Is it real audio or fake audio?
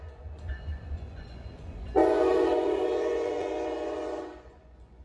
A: fake